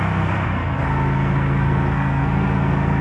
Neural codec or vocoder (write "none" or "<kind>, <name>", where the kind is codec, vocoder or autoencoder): codec, SNAC